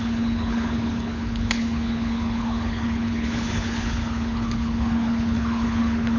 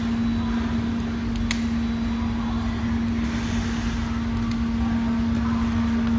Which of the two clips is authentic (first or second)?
second